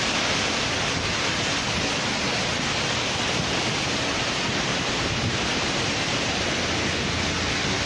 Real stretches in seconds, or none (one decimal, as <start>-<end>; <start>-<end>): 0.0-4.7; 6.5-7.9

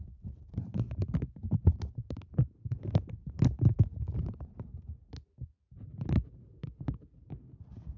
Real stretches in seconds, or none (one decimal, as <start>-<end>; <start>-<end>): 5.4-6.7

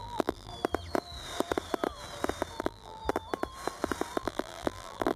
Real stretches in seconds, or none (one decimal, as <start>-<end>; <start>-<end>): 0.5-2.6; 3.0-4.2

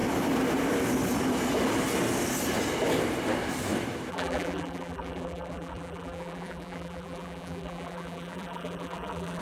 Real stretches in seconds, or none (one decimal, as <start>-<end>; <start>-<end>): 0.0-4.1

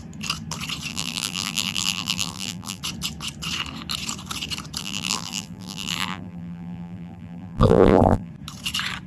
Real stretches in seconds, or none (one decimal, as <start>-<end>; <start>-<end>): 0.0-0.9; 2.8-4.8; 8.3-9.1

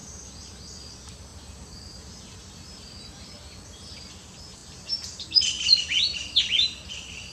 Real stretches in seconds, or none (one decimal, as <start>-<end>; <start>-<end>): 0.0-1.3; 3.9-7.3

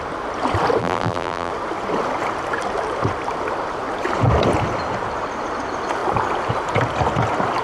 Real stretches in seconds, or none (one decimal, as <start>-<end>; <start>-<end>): 0.0-0.8; 1.5-7.6

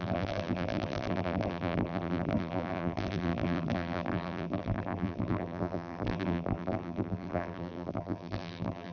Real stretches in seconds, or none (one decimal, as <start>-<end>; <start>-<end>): none